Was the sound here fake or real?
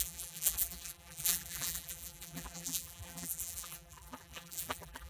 fake